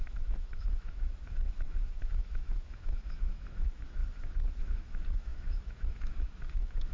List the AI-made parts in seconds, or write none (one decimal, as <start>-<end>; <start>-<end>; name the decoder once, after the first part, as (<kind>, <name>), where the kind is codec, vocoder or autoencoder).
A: 0.0-4.0 (autoencoder, DAC-VAE); 4.6-6.9